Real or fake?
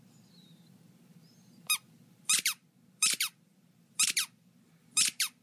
fake